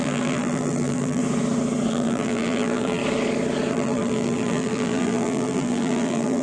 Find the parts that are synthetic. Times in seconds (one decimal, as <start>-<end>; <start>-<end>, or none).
0.0-1.2; 1.9-3.0; 3.7-6.4